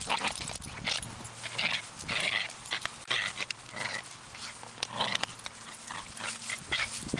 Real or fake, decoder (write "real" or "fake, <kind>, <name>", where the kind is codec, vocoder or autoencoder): real